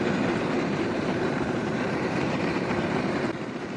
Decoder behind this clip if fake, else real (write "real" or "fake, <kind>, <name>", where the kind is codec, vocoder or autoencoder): fake, vocoder, BigVGAN v2